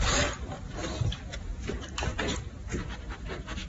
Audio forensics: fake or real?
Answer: fake